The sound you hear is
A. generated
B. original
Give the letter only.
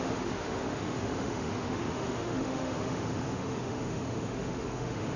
A